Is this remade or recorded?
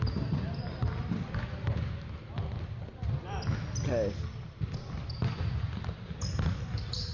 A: recorded